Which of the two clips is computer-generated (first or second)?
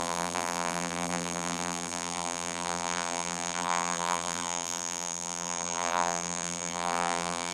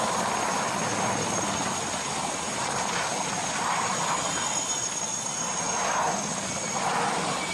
first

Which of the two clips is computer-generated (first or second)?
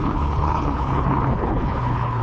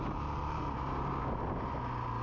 first